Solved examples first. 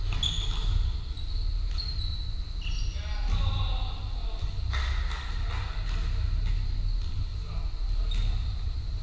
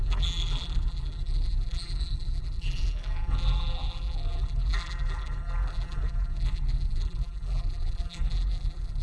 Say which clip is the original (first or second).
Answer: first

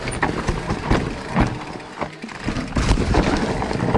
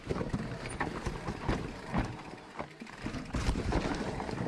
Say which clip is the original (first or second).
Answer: first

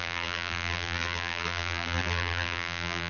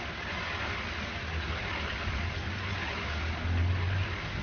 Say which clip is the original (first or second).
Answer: second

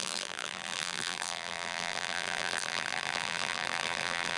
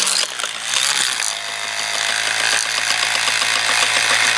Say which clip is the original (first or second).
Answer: second